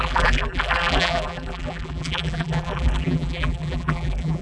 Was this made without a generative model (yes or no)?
no